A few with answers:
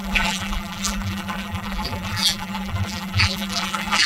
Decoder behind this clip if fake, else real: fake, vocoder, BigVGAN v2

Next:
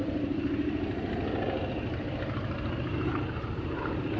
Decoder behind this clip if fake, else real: fake, vocoder, BigVGAN v2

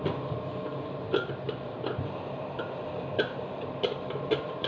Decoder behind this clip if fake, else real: fake, vocoder, BigVGAN v2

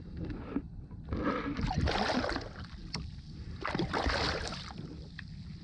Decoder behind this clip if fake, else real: fake, vocoder, BigVGAN v2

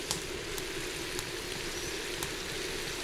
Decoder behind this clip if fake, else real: real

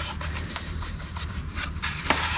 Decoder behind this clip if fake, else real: fake, vocoder, BigVGAN v2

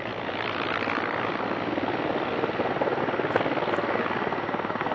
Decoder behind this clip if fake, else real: real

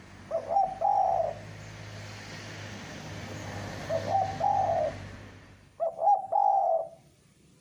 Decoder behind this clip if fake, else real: real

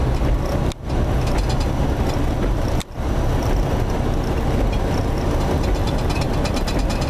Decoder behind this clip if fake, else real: real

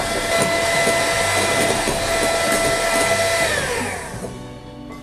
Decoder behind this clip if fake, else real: real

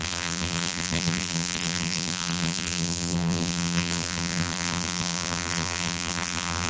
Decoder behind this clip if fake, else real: fake, vocoder, BigVGAN v2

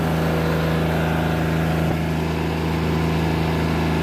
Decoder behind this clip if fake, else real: real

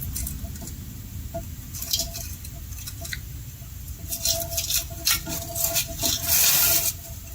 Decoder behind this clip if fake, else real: real